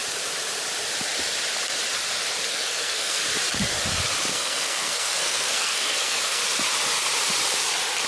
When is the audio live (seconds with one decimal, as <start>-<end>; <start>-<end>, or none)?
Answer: 0.0-2.5; 3.2-4.3; 6.4-8.1